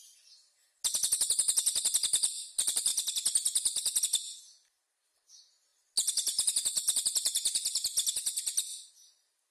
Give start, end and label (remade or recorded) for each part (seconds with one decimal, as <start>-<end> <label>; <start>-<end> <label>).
0.0-9.5 recorded